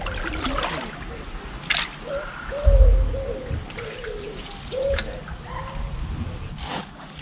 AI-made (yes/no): no